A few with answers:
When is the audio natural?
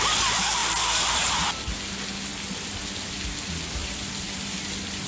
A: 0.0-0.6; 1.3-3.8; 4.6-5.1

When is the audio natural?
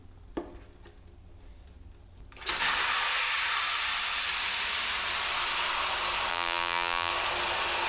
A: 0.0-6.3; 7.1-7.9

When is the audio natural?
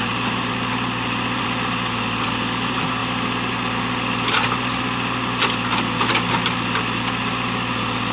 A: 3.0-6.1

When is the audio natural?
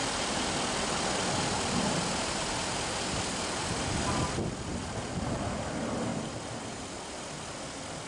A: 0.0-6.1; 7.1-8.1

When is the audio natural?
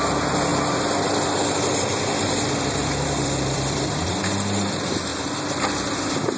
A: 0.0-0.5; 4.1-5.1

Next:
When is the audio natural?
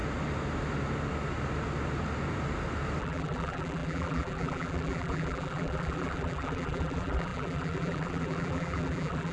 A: 0.0-3.0